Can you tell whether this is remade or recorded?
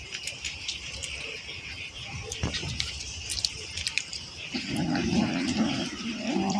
remade